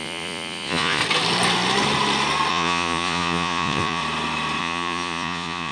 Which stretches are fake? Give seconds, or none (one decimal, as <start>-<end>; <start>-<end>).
0.0-1.0; 2.5-4.0; 4.6-5.7